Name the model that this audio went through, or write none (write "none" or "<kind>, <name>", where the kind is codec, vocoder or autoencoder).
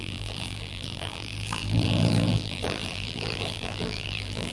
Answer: vocoder, BigVGAN v2